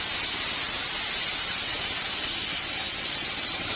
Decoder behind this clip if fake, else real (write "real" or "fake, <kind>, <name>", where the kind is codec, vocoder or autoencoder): real